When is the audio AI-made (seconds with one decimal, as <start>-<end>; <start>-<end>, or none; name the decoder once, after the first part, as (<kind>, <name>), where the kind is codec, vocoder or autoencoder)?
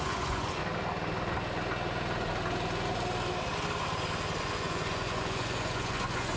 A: 0.0-0.6 (vocoder, Vocos); 4.4-6.4